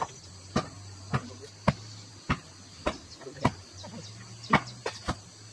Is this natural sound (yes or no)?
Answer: yes